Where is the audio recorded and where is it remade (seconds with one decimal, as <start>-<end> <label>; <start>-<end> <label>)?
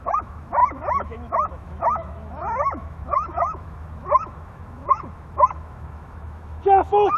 0.0-7.2 remade